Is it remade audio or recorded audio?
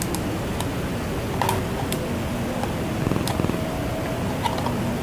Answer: recorded